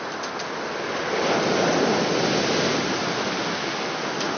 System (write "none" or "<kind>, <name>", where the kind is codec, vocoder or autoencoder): none